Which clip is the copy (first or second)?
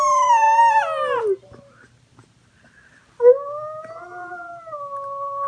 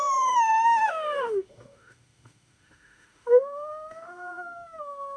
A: second